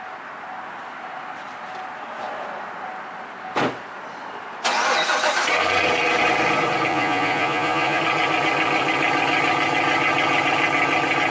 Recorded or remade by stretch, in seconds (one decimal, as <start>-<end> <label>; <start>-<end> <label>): 0.0-6.9 recorded; 6.9-8.0 remade; 8.0-11.3 recorded